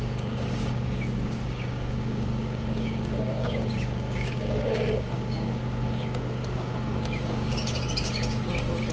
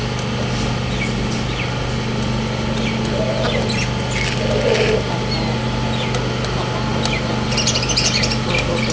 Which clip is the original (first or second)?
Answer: second